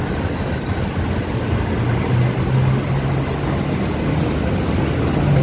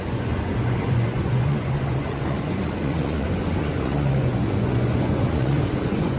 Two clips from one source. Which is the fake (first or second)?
second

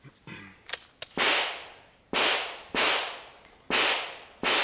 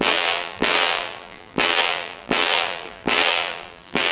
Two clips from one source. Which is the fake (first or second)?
second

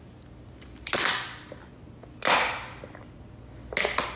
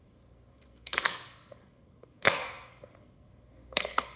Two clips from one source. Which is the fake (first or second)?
second